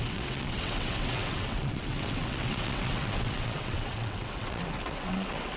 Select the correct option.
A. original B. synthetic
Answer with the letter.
B